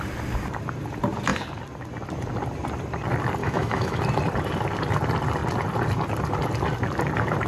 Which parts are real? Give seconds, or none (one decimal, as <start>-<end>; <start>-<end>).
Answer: 0.0-3.4; 4.0-7.5